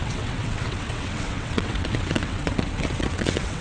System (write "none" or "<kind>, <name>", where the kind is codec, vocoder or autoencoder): vocoder, WaveNeXt